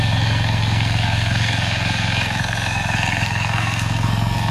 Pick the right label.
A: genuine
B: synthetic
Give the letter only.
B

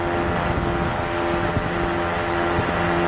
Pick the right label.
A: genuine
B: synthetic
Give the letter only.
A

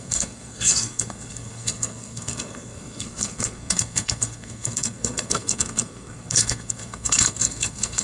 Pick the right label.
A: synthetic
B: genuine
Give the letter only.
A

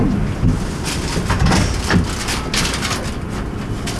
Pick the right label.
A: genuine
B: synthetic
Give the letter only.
A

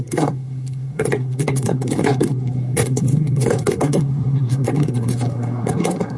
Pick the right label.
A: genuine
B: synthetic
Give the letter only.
B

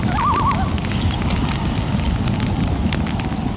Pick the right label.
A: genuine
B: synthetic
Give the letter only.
A